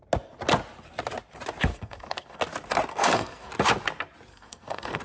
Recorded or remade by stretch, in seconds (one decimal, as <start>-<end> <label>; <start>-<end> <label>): 0.0-1.7 recorded; 1.7-2.4 remade; 2.4-2.9 recorded; 2.9-3.5 remade; 3.5-4.3 recorded; 4.3-5.0 remade

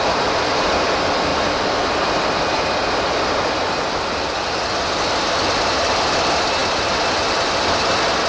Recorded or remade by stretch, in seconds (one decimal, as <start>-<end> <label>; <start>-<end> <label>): 0.0-8.3 recorded

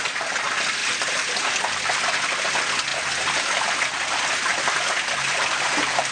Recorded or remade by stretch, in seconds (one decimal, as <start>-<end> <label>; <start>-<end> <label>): 0.0-4.5 recorded; 4.5-6.1 remade

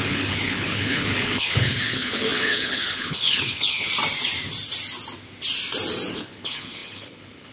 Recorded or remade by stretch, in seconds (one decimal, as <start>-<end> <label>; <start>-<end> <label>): 0.0-3.9 remade; 3.9-6.1 recorded; 6.1-7.5 remade

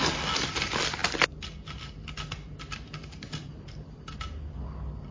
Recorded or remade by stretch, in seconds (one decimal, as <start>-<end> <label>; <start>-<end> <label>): 0.0-5.1 recorded